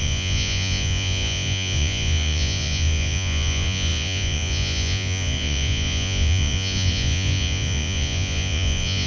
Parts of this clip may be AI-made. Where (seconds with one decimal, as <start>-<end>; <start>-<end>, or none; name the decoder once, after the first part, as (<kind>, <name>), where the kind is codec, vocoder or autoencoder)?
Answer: 0.0-9.1 (vocoder, Vocos)